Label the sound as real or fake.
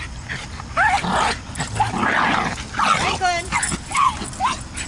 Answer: real